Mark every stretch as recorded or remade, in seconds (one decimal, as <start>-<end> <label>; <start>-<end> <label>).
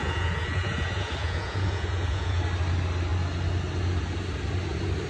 0.0-2.4 remade; 2.4-5.1 recorded